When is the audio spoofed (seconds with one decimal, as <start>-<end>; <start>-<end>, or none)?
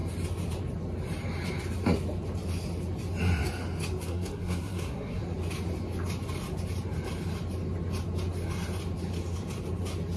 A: 4.0-5.2